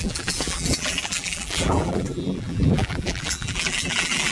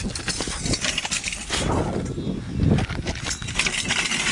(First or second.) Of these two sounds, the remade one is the first